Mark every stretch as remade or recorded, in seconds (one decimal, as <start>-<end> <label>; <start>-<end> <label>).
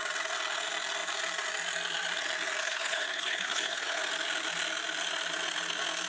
0.0-2.6 recorded; 2.6-4.0 remade; 4.0-6.1 recorded